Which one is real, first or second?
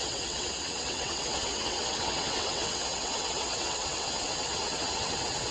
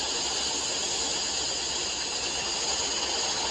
second